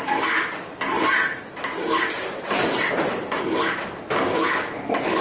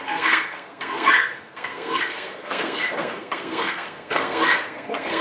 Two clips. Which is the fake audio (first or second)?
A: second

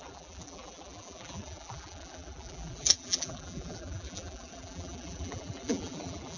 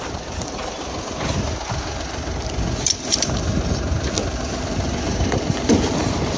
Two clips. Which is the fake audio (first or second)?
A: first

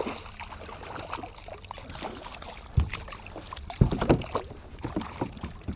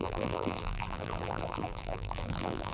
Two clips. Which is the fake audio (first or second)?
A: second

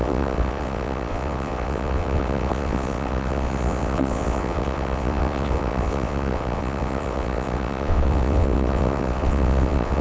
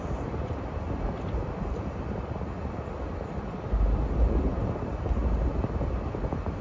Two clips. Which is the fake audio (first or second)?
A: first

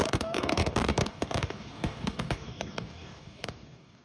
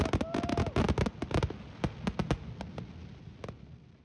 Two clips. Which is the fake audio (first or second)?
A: first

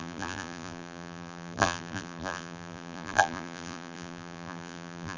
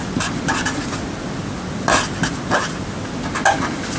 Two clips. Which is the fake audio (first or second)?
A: first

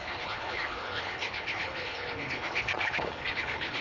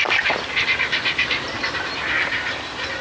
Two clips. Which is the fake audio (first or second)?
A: first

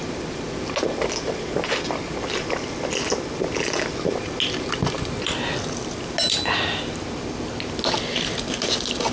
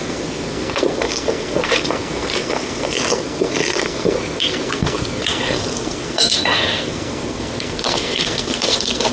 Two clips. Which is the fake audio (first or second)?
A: second